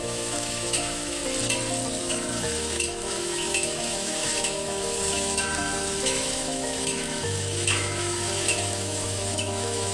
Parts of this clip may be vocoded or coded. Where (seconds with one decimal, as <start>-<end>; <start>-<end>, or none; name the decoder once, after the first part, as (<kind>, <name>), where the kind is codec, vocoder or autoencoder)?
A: 0.0-1.2 (autoencoder, DAC-VAE); 2.0-9.9